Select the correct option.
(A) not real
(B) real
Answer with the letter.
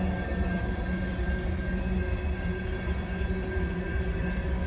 B